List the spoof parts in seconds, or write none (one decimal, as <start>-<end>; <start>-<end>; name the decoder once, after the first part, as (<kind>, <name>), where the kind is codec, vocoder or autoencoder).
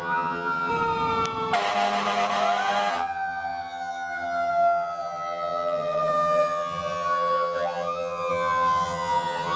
0.0-0.7 (vocoder, HiFi-GAN); 2.9-9.6